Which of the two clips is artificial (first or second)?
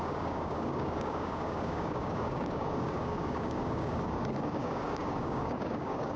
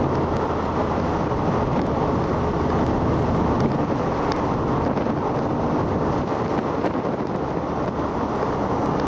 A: first